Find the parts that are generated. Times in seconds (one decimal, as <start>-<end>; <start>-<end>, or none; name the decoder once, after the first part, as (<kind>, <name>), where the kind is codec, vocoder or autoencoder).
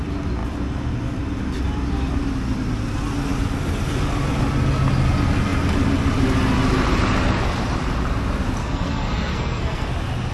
8.6-9.9 (codec, SNAC)